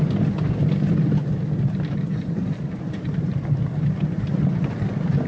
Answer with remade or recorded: recorded